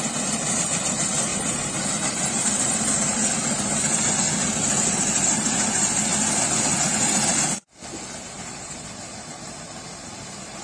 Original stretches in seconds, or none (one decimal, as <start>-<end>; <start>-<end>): 0.0-1.3; 3.7-10.6